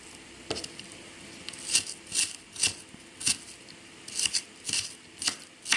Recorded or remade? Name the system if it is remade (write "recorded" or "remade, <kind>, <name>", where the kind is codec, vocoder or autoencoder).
recorded